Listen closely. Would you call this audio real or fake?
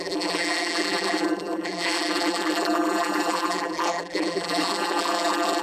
fake